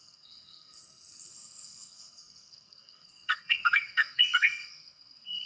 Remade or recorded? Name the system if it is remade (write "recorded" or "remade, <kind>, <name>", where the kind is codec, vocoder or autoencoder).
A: remade, codec, SNAC